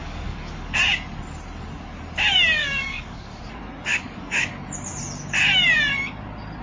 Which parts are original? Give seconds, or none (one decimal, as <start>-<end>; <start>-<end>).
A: 0.8-2.6; 3.4-3.9; 4.5-6.6